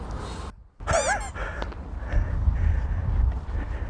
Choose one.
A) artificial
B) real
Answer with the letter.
B